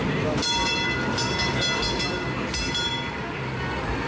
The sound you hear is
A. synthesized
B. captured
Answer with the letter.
B